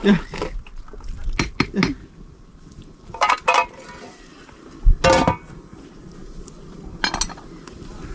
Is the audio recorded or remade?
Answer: recorded